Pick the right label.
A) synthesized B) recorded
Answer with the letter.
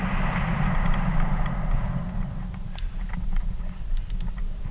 B